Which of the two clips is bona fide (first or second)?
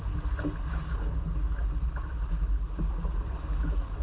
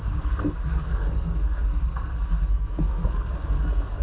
first